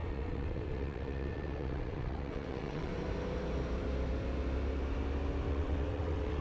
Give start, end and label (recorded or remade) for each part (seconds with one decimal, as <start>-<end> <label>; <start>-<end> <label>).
0.0-2.9 remade; 2.9-5.5 recorded; 5.5-6.4 remade